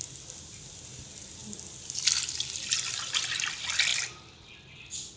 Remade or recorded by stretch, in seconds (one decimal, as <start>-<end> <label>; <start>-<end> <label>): 0.0-5.2 recorded